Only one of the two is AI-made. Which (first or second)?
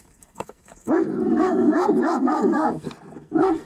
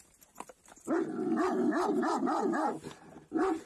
first